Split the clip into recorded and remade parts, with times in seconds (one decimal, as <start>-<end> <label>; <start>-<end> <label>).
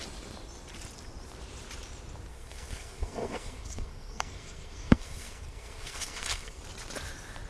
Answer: 0.0-2.3 recorded; 2.3-6.6 remade; 6.6-7.5 recorded